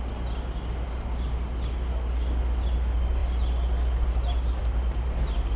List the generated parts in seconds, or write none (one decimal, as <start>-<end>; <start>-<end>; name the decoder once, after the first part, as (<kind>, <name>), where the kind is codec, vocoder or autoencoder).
none